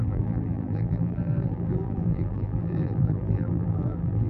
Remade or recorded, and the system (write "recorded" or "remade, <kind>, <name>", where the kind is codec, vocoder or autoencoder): remade, vocoder, BigVGAN v2